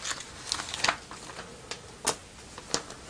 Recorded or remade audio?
recorded